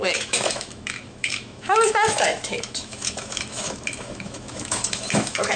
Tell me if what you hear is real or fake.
fake